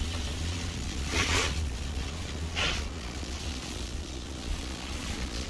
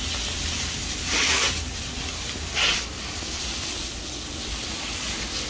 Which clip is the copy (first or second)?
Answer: first